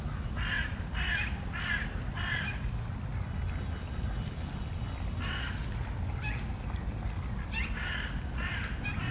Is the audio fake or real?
real